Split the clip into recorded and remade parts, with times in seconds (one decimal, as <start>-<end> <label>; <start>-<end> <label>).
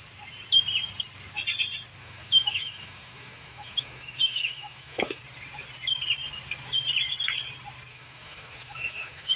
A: 0.0-2.0 recorded; 2.0-5.2 remade; 5.2-7.9 recorded; 7.9-9.4 remade